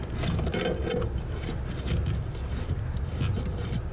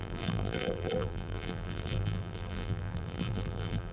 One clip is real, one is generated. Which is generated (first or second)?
second